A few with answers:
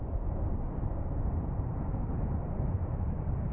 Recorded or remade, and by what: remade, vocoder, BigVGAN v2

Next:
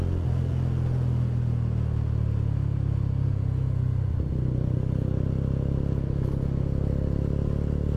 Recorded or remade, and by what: recorded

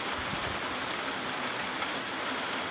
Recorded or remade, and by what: recorded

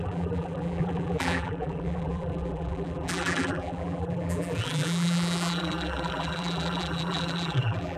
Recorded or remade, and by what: remade, vocoder, BigVGAN v2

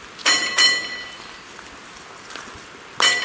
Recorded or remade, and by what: recorded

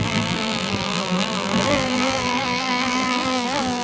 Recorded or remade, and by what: remade, vocoder, BigVGAN v2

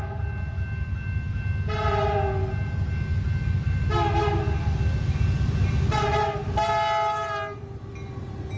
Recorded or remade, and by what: recorded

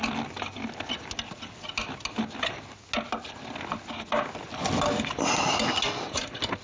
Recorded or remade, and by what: recorded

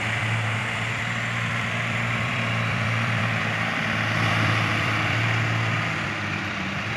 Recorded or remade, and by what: remade, vocoder, BigVGAN v2